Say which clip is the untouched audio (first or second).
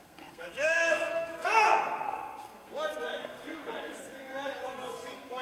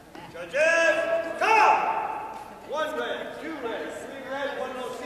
second